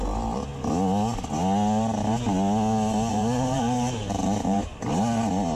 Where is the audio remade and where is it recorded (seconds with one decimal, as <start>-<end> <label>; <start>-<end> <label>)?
0.0-0.5 remade; 0.5-3.1 recorded; 3.1-4.7 remade; 4.7-5.6 recorded